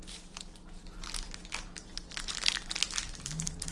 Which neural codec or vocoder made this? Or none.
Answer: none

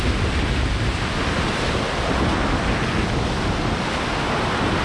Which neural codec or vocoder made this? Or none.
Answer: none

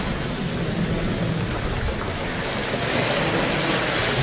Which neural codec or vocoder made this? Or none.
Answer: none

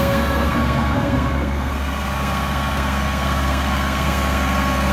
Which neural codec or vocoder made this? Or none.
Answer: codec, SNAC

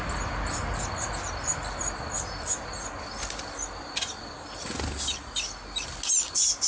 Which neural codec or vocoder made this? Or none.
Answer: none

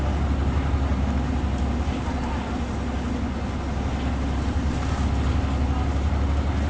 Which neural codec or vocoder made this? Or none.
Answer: none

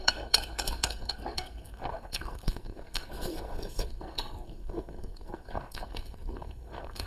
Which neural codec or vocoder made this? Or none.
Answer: codec, SNAC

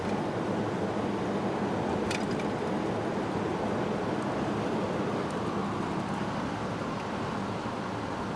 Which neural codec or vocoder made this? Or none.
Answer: none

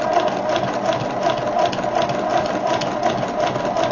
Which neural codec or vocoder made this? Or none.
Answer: none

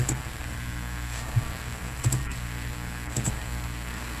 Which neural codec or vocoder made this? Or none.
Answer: codec, SNAC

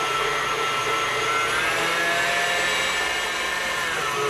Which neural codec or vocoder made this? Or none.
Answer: none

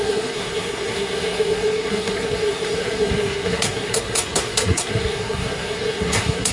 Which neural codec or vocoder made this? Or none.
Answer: codec, SNAC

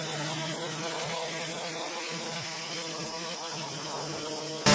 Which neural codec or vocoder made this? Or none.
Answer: none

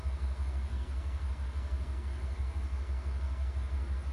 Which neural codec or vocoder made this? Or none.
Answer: codec, SNAC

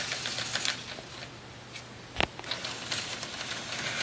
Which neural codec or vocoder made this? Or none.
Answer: none